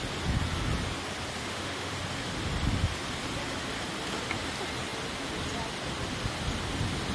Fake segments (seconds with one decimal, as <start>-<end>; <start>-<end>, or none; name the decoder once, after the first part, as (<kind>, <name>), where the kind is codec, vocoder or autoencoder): 1.4-1.9 (autoencoder, DAC-VAE)